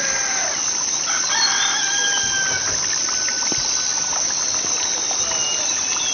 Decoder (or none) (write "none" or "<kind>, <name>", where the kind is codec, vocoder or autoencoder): none